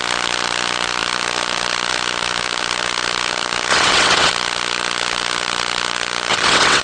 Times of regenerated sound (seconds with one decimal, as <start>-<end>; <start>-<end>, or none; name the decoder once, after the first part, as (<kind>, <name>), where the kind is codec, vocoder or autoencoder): 3.7-4.3 (vocoder, WaveNeXt); 6.3-6.8